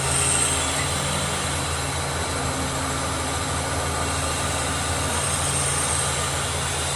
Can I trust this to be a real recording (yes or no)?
yes